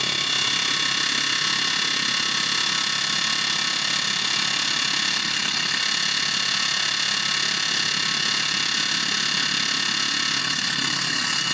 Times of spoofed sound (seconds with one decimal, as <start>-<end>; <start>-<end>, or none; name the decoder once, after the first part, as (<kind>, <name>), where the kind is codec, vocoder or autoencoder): 5.1-5.8 (codec, SNAC); 10.4-11.5